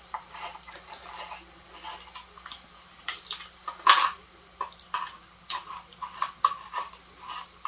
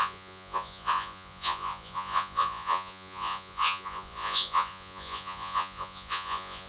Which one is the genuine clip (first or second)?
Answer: first